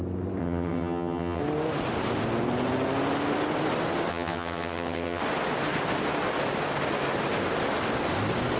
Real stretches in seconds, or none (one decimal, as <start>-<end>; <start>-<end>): 0.0-0.4; 1.4-4.1; 5.2-8.6